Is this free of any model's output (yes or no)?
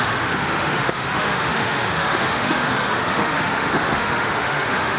no